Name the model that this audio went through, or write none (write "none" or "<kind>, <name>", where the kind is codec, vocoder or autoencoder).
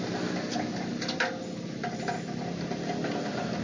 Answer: none